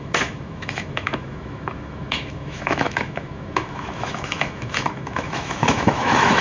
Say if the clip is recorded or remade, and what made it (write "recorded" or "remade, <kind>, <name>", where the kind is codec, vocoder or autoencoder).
remade, autoencoder, DAC-VAE